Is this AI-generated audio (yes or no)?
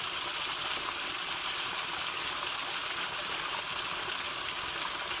yes